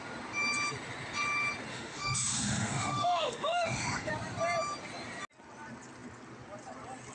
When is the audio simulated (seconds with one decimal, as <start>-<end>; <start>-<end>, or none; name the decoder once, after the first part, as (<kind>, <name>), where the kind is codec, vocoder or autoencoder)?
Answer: 1.7-4.1 (autoencoder, DAC-VAE)